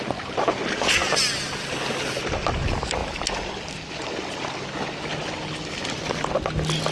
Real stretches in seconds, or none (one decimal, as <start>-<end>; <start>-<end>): 0.0-6.9